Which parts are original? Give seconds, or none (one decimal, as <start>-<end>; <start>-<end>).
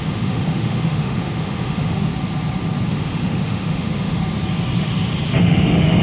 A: 2.1-2.9; 4.2-5.4